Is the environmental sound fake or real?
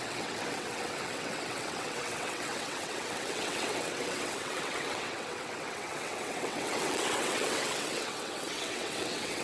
fake